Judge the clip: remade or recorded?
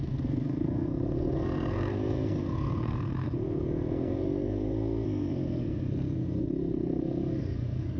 remade